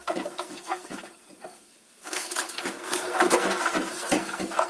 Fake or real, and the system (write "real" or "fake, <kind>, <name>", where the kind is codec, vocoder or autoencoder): fake, codec, SNAC